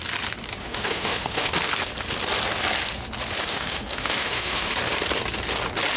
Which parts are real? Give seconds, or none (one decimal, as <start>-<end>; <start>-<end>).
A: 0.0-0.6; 1.5-3.5; 4.7-6.0